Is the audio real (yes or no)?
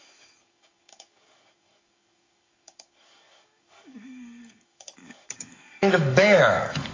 no